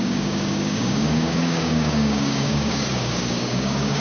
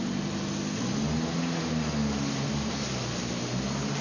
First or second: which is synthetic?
first